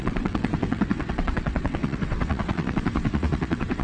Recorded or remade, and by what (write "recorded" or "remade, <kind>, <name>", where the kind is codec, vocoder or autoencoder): remade, vocoder, WaveNeXt